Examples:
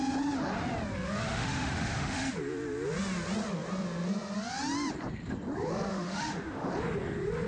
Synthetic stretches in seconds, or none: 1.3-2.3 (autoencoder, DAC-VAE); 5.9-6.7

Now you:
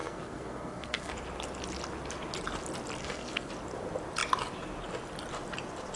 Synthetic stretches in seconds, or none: 0.0-1.1 (codec, SNAC); 3.0-3.5

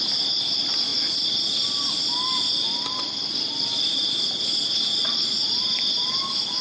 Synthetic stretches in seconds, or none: none